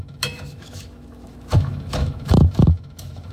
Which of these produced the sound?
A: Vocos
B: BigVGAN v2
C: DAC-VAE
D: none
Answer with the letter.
C